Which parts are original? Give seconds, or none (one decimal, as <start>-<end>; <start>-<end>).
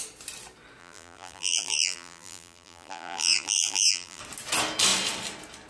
0.0-0.8; 4.2-5.7